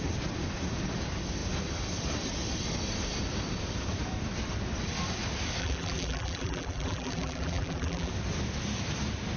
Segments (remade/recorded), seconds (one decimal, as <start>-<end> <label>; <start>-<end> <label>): 0.0-5.6 recorded; 5.6-8.1 remade; 8.1-9.4 recorded